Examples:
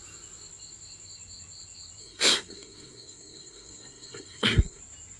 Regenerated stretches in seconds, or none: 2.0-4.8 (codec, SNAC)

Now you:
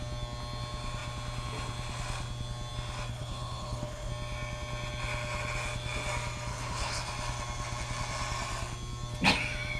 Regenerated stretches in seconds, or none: 3.1-4.1 (codec, HILCodec); 6.5-7.0

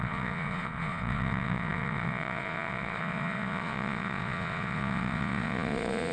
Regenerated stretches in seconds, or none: 0.0-6.1 (vocoder, Vocos)

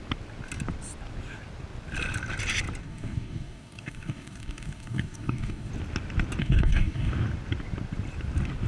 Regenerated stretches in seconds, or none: 2.8-5.7 (codec, DAC); 6.4-7.1

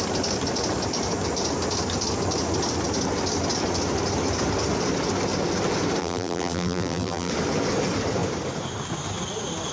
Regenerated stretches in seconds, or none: 6.0-7.3 (vocoder, BigVGAN v2)

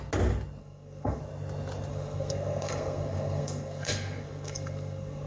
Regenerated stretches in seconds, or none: 0.6-1.2 (codec, SNAC); 1.9-5.3